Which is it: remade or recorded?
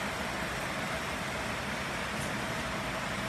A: recorded